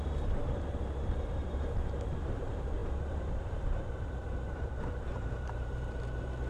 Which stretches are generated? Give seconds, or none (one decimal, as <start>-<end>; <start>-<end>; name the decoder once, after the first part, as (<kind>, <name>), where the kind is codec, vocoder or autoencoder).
0.0-6.5 (vocoder, BigVGAN v2)